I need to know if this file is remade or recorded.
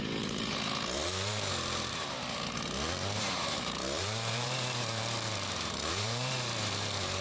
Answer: remade